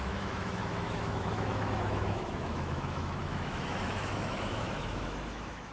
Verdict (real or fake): fake